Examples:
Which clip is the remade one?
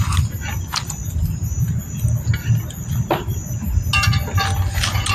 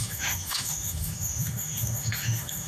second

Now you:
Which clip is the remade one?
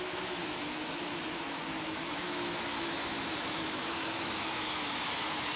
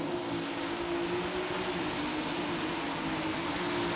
first